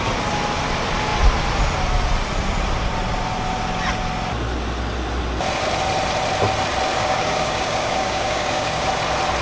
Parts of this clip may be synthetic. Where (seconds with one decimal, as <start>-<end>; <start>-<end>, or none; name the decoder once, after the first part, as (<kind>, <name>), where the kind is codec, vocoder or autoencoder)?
6.9-8.9 (codec, DAC)

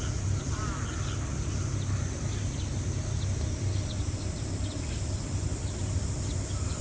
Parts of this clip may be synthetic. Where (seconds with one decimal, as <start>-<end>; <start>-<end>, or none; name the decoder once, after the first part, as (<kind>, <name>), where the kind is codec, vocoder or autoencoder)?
none

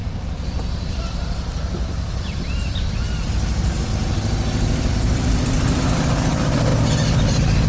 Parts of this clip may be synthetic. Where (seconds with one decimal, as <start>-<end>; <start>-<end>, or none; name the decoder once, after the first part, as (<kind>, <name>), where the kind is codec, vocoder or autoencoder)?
0.0-3.9 (vocoder, BigVGAN v2); 4.9-6.7

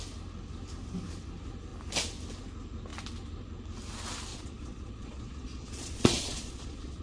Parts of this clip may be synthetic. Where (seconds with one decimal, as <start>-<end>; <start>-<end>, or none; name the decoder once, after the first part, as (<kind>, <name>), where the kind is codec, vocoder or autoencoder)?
4.3-7.0 (vocoder, Vocos)

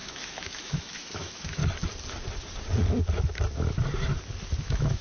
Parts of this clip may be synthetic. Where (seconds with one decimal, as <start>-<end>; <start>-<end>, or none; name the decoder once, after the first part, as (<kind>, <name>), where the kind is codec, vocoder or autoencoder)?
0.0-1.6 (autoencoder, DAC-VAE); 4.6-5.0

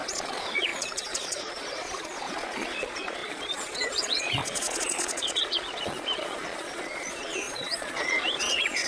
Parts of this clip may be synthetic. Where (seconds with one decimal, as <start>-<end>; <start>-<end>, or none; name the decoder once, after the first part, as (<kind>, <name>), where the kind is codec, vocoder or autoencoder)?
0.0-8.9 (vocoder, Vocos)